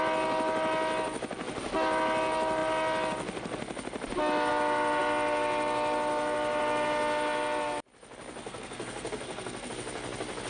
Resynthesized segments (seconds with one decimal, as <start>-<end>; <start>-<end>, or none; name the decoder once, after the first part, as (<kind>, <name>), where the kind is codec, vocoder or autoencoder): 8.4-9.7 (codec, SNAC)